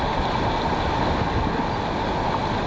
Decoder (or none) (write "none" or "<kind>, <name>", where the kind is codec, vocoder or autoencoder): none